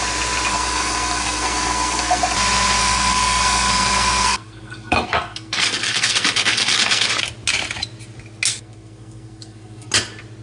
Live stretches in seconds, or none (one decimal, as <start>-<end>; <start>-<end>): 0.0-0.5; 2.2-2.8; 7.1-8.5; 9.9-10.4